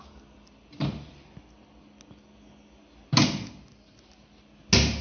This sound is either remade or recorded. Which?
recorded